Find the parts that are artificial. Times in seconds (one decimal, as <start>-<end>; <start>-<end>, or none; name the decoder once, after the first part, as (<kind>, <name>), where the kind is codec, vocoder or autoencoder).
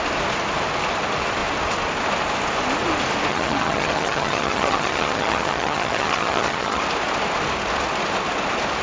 3.3-6.8 (vocoder, HiFi-GAN)